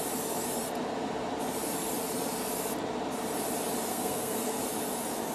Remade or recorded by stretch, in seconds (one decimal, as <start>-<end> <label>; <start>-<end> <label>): 0.0-3.9 recorded; 3.9-4.6 remade; 4.6-5.3 recorded